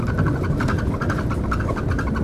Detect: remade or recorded recorded